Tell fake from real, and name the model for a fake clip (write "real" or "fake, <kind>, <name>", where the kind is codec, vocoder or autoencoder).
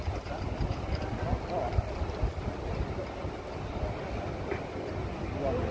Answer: real